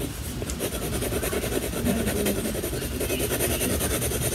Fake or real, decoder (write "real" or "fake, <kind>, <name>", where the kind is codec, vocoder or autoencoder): real